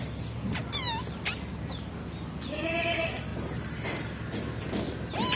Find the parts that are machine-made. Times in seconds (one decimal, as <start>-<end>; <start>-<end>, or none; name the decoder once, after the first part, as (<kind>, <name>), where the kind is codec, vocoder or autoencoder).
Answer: none